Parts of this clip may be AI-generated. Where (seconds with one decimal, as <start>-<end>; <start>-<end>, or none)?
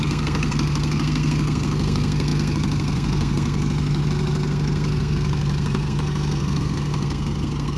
0.0-7.8